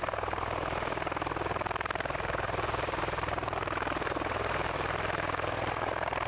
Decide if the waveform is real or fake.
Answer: fake